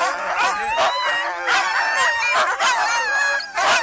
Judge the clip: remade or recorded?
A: recorded